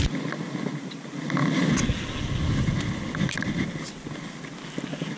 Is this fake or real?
real